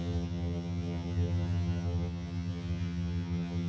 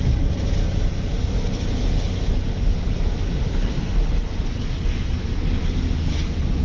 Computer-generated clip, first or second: first